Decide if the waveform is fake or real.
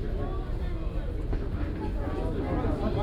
real